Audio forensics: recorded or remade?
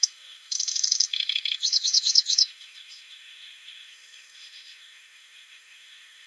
remade